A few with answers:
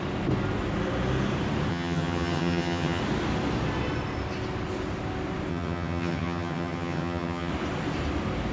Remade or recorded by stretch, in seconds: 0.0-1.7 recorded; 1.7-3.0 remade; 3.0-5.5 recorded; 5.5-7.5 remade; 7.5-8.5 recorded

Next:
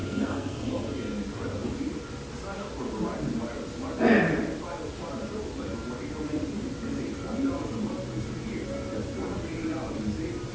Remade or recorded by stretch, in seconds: 0.0-0.7 remade; 0.7-10.5 recorded

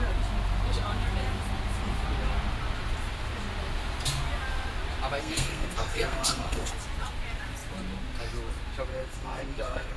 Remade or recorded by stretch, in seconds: 0.0-5.2 recorded; 5.2-6.7 remade; 6.7-8.9 recorded; 8.9-10.0 remade

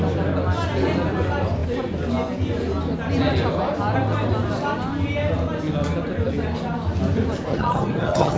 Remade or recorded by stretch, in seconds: 0.0-7.5 recorded; 7.5-8.4 remade

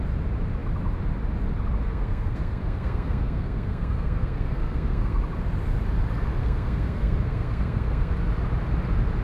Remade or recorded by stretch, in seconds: 0.0-1.9 recorded; 1.9-5.2 remade; 5.2-6.4 recorded; 6.4-8.1 remade; 8.1-9.2 recorded

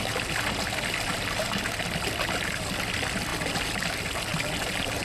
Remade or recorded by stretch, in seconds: 0.0-5.0 recorded

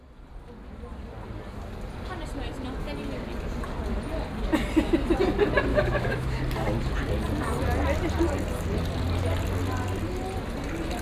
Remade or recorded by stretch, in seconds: 0.0-5.7 recorded; 5.7-6.4 remade; 6.4-11.0 recorded

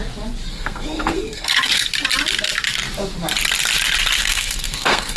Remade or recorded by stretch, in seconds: 0.0-0.5 recorded; 0.5-1.9 remade; 1.9-4.2 recorded; 4.2-5.2 remade